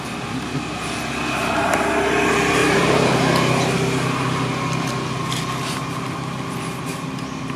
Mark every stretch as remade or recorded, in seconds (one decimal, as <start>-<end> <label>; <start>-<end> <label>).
0.0-2.6 recorded; 2.6-3.5 remade; 3.5-7.6 recorded